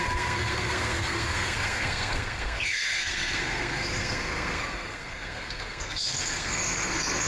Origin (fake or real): fake